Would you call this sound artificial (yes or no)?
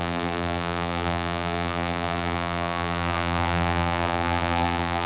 yes